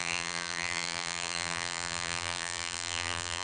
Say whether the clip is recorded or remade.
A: remade